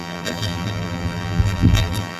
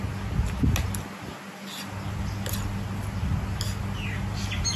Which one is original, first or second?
second